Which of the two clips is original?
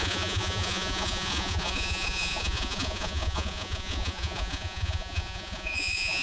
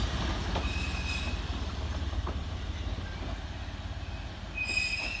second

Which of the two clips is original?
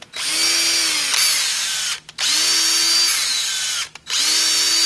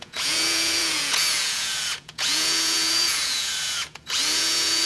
first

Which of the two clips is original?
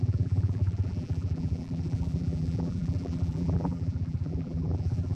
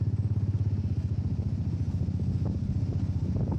second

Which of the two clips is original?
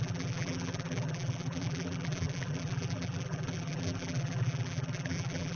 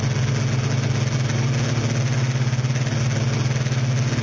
second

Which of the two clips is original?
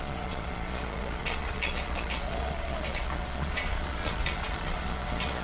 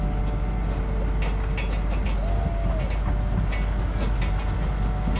second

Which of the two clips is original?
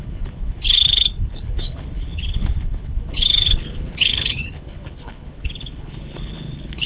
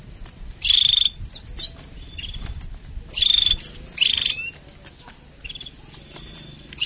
second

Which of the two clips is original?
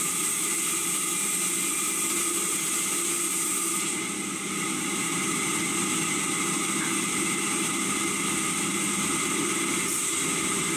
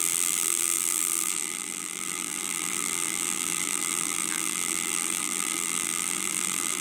first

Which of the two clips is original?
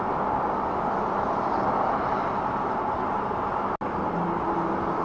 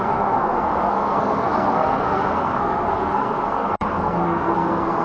first